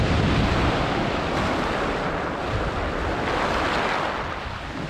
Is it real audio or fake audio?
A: real